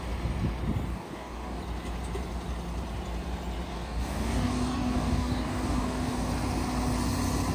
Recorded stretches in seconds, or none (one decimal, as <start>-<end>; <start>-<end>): 0.0-0.9; 1.6-3.7; 6.3-7.5